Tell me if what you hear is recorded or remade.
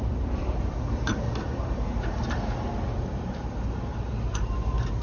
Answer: remade